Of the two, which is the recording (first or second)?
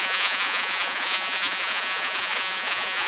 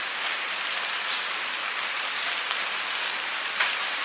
second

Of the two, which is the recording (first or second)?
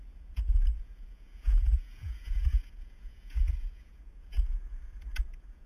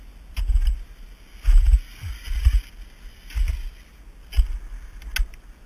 second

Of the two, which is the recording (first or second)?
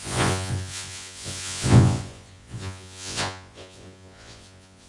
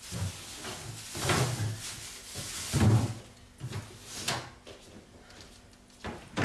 second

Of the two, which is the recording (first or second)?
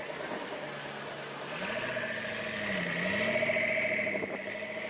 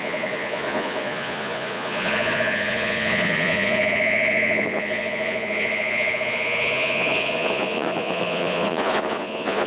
first